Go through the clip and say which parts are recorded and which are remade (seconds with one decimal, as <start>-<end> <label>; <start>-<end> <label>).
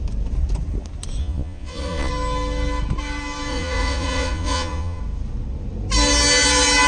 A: 0.0-1.2 recorded; 1.2-2.1 remade; 2.1-3.5 recorded; 3.5-5.0 remade; 5.0-6.9 recorded